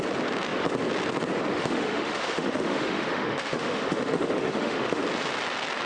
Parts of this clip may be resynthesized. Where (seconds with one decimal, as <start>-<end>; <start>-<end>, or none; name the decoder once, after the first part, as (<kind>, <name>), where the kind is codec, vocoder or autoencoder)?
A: 1.5-5.0 (autoencoder, DAC-VAE)